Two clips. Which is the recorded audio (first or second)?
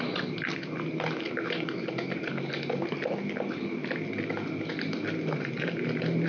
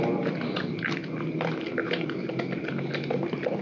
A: first